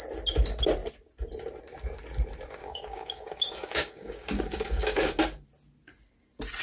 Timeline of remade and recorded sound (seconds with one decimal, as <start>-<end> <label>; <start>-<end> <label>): 0.0-2.6 recorded; 2.6-5.2 remade; 5.2-6.6 recorded